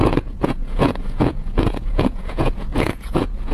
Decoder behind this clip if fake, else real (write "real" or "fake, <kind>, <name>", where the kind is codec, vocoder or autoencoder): fake, vocoder, Vocos